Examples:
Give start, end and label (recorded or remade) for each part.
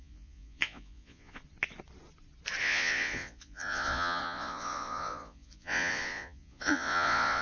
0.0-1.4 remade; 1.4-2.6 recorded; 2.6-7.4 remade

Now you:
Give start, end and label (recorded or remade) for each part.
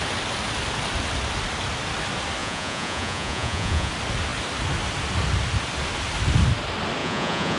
0.0-2.4 recorded; 2.4-3.9 remade; 3.9-7.0 recorded; 7.0-7.6 remade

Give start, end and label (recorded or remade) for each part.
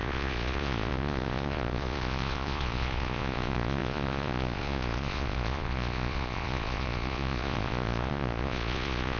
0.0-9.2 remade